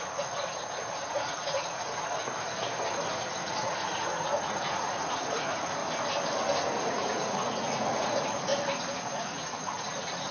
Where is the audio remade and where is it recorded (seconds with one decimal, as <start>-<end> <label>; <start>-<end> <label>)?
0.0-2.2 remade; 2.2-3.1 recorded; 3.1-5.8 remade; 5.8-6.8 recorded; 6.8-8.5 remade; 8.5-9.1 recorded; 9.1-10.3 remade